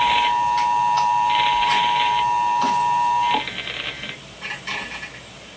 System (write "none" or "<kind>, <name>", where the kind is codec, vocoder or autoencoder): none